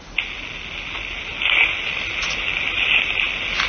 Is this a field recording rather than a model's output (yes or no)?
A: yes